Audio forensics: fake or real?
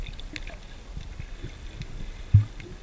real